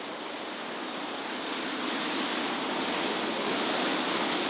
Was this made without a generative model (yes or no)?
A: yes